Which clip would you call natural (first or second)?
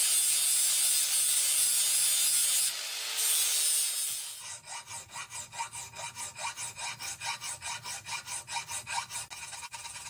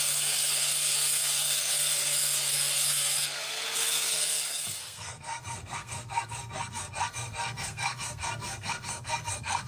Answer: first